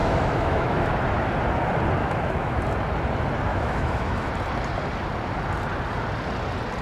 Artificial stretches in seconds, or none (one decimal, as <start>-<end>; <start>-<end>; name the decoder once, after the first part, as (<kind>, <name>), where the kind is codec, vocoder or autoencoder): 0.0-0.9 (autoencoder, DAC-VAE); 2.0-2.6; 3.5-4.3